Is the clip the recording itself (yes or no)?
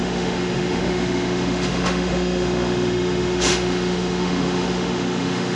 no